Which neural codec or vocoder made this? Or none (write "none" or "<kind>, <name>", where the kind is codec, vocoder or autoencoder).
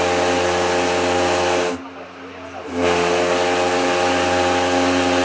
none